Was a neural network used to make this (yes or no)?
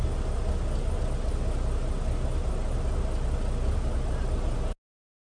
no